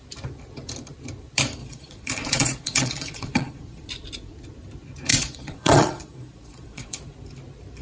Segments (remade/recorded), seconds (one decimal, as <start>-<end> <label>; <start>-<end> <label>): 0.0-1.6 recorded; 1.6-3.9 remade; 3.9-5.1 recorded; 5.1-7.0 remade; 7.0-7.8 recorded